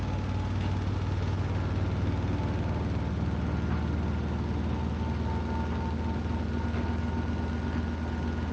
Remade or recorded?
recorded